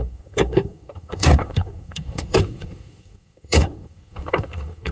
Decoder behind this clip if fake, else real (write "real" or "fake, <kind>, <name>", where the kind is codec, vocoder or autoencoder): fake, codec, SNAC